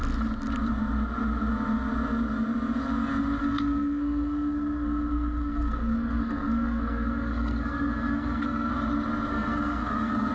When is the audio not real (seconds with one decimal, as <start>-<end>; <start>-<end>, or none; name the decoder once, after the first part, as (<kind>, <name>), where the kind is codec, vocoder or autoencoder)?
3.4-8.7 (codec, SNAC); 9.3-10.3